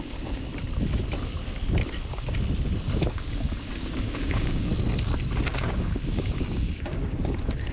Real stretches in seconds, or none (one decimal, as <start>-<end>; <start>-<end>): 0.5-2.9; 4.7-5.5